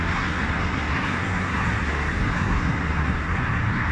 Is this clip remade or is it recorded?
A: remade